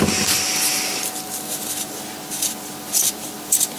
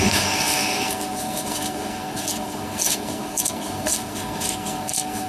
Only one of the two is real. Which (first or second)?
first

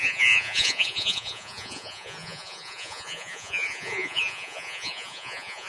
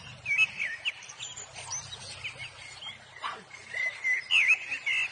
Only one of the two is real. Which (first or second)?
second